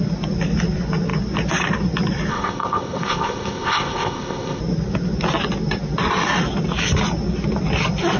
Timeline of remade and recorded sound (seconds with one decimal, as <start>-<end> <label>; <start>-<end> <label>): 0.0-2.3 recorded; 2.3-4.6 remade; 4.6-8.2 recorded